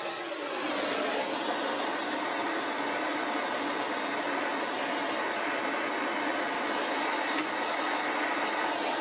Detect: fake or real real